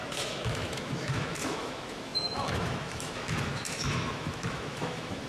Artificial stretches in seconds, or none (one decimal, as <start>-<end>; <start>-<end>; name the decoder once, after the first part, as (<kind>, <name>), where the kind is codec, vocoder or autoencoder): 0.0-5.3 (autoencoder, DAC-VAE)